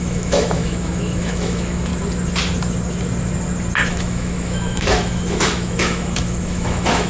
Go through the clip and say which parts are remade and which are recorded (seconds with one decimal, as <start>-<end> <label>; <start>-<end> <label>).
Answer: 0.0-1.9 remade; 1.9-3.9 recorded; 3.9-7.1 remade